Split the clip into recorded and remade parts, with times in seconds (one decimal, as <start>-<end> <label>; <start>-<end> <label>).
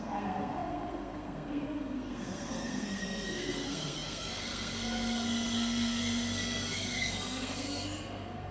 0.0-8.5 remade